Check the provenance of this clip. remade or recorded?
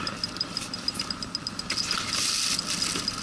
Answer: recorded